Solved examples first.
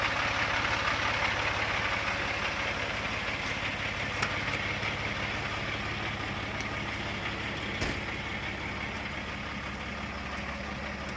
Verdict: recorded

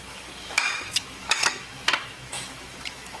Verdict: remade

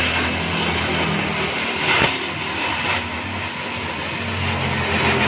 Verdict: recorded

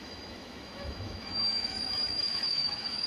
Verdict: remade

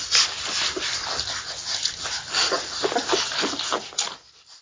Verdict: recorded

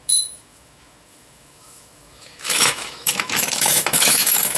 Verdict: remade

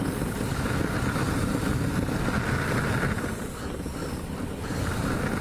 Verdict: recorded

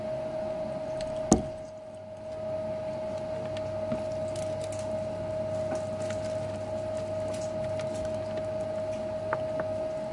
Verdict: recorded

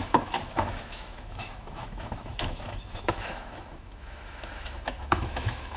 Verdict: remade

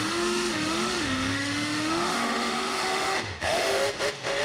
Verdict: remade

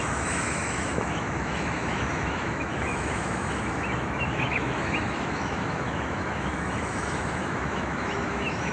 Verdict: remade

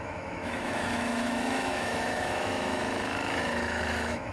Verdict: remade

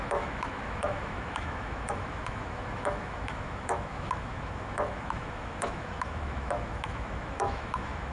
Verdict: remade